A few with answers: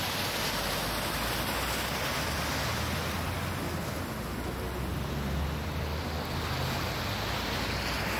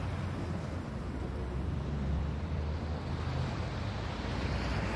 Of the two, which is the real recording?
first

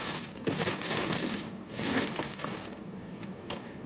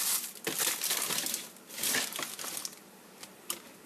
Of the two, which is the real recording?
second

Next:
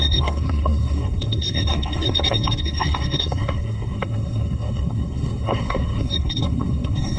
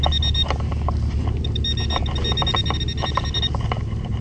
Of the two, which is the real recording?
second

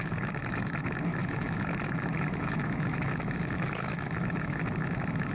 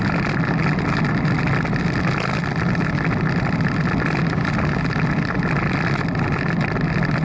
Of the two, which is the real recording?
second